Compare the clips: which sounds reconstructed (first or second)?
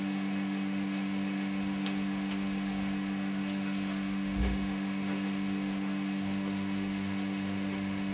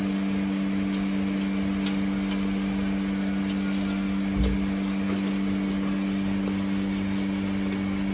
first